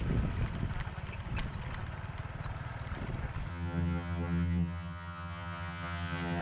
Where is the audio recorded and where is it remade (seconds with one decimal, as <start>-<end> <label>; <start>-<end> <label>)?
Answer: 0.0-3.5 recorded; 3.5-6.4 remade